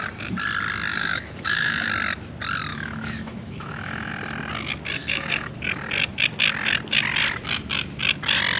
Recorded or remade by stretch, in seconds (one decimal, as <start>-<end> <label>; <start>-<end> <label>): 0.0-0.9 recorded; 0.9-1.9 remade; 1.9-2.7 recorded; 2.7-4.1 remade; 4.1-5.0 recorded; 5.0-5.5 remade; 5.5-8.6 recorded